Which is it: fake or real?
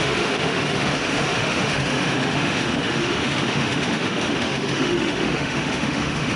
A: fake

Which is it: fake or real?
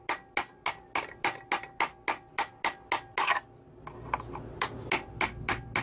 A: real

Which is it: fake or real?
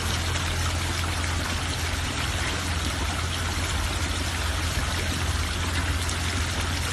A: real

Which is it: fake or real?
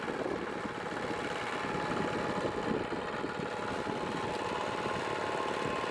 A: real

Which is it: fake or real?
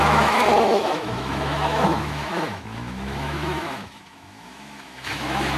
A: fake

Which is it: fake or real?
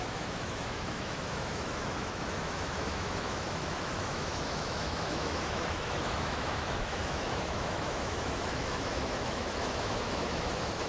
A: fake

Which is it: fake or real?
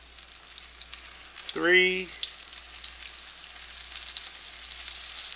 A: real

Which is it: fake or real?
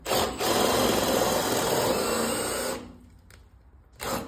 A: real